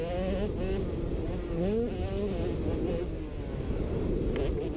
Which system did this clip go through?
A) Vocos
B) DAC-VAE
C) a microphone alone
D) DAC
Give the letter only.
C